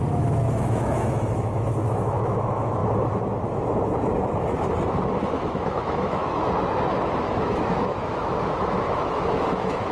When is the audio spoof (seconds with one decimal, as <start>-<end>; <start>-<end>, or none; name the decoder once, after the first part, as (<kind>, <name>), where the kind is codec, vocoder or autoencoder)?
0.0-2.8 (autoencoder, DAC-VAE); 5.2-6.2; 7.0-9.9